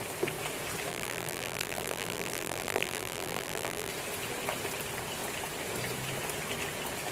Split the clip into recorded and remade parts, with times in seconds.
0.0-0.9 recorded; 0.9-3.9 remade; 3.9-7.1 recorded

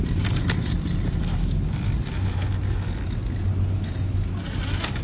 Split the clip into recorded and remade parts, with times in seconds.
0.0-2.4 remade; 2.4-5.0 recorded